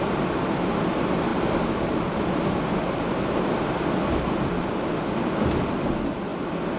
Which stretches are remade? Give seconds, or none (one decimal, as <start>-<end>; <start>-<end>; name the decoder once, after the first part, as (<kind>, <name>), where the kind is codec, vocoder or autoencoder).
none

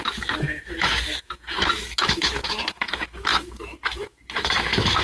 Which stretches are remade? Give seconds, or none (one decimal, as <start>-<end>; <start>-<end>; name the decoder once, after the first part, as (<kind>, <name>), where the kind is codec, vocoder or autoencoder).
0.0-5.0 (autoencoder, DAC-VAE)